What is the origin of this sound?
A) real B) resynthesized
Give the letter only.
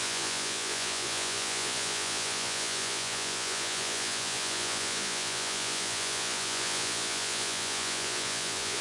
B